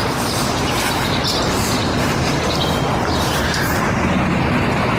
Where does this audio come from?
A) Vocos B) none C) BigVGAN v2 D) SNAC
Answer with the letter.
B